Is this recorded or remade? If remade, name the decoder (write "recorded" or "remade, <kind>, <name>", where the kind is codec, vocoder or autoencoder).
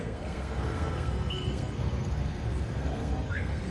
remade, codec, SNAC